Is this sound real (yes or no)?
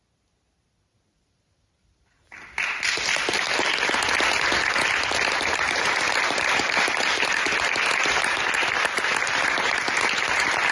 yes